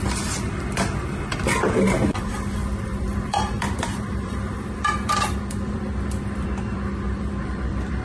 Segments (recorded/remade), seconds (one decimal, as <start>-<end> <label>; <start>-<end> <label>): 0.0-8.0 remade